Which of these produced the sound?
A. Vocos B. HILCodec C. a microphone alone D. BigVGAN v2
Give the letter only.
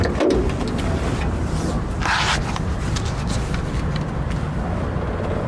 C